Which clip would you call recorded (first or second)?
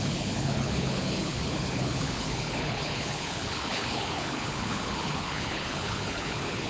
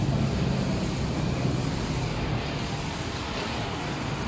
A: second